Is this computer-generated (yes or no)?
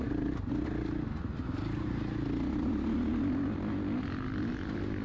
no